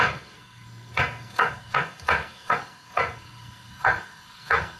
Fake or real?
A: fake